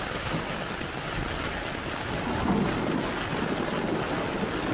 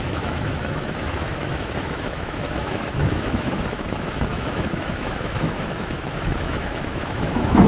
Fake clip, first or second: second